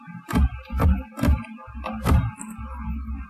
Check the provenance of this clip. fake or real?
real